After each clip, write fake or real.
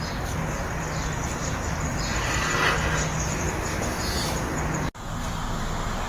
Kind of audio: real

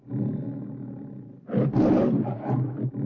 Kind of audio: real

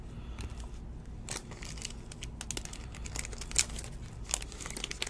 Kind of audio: real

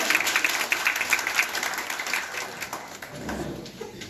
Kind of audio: real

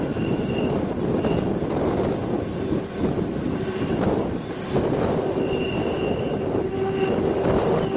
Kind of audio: real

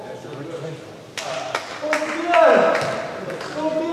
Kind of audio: real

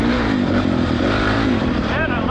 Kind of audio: fake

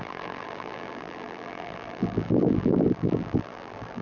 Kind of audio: fake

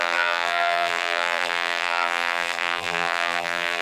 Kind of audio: fake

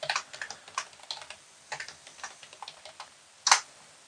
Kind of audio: real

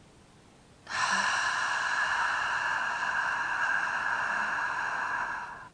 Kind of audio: real